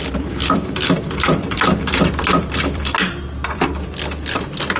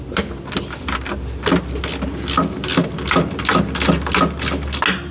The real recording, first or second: second